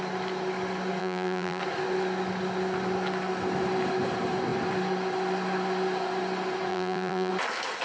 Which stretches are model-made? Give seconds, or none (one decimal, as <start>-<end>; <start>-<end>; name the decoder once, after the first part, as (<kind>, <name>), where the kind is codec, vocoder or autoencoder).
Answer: 1.0-1.6 (vocoder, BigVGAN v2); 6.7-7.3